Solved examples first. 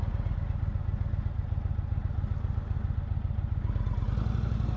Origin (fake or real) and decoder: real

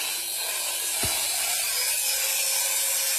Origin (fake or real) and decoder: real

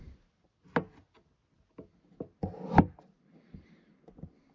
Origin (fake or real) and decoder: real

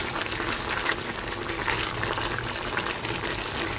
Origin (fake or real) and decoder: real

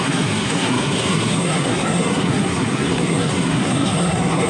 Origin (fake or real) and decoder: fake, codec, SNAC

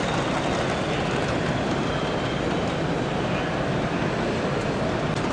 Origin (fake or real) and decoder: real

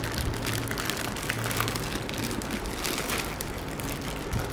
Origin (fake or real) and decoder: real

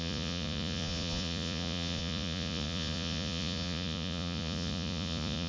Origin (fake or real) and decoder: fake, vocoder, Vocos